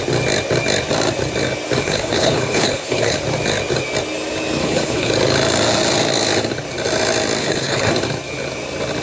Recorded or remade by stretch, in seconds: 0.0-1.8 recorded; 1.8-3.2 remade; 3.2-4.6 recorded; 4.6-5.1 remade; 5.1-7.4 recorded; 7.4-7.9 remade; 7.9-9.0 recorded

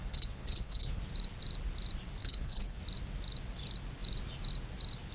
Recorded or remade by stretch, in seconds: 0.0-1.0 remade; 1.0-2.2 recorded; 2.2-2.8 remade; 2.8-5.1 recorded